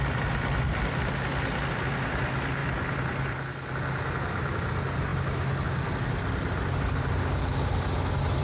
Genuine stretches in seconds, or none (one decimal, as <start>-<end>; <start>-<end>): 0.0-8.4